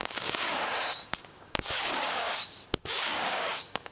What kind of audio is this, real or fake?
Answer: fake